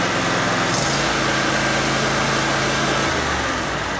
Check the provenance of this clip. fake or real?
real